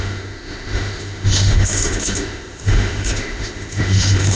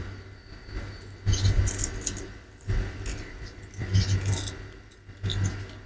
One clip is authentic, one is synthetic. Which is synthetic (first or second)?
first